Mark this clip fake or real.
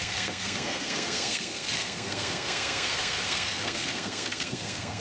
fake